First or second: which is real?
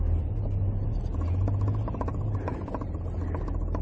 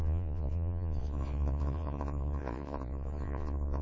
first